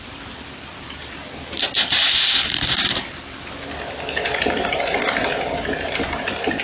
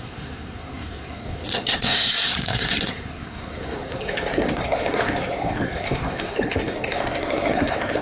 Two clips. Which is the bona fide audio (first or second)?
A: first